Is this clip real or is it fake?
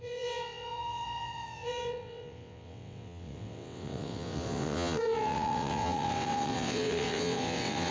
fake